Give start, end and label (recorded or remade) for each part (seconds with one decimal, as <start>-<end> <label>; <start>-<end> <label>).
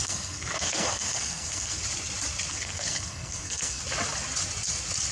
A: 0.0-1.8 remade; 1.8-2.5 recorded; 2.5-3.8 remade; 3.8-5.1 recorded